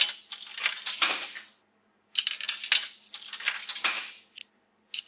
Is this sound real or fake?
real